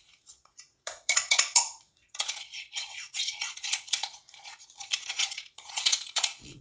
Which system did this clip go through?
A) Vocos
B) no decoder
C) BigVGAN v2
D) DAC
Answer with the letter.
A